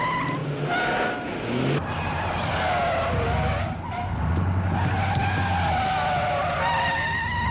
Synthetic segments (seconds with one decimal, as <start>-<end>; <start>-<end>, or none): none